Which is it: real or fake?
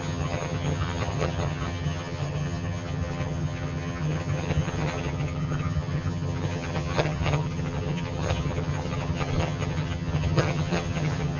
fake